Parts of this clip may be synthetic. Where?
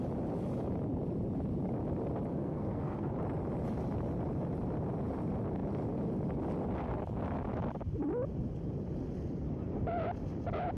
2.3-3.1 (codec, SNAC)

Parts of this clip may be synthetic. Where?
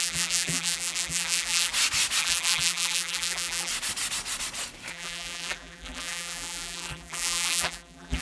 0.0-1.7 (vocoder, BigVGAN v2); 2.2-3.7; 4.9-8.2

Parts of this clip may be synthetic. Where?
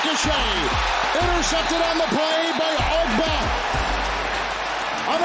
none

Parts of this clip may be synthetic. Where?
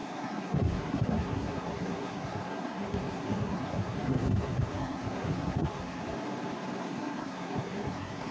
0.0-6.0 (codec, SNAC); 6.8-8.3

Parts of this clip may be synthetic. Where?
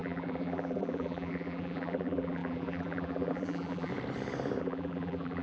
0.0-3.9 (vocoder, BigVGAN v2); 4.6-5.4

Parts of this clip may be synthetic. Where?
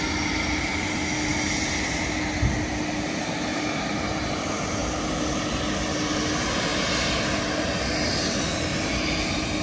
none